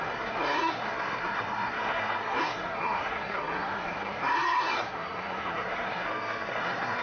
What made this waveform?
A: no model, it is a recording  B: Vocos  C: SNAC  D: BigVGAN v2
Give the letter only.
C